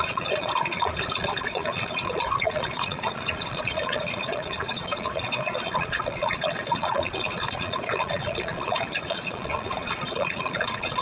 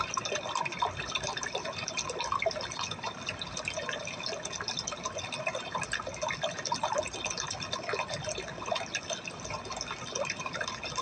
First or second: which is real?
second